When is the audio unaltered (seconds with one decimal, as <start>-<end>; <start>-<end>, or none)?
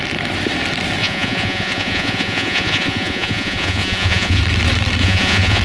0.0-1.0; 4.4-5.0